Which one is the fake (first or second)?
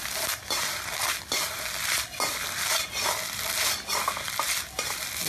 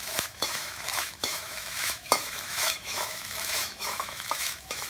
second